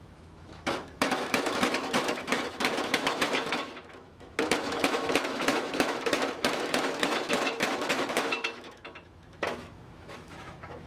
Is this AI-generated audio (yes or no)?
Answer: yes